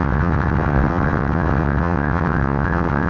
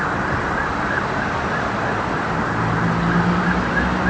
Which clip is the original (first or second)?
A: second